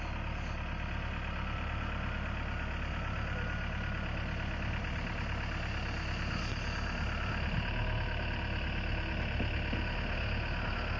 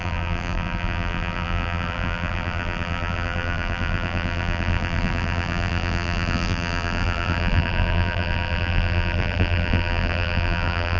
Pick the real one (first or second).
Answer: first